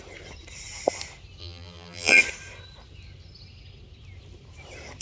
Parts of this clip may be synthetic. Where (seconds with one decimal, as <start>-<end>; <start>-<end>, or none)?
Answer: 1.4-2.2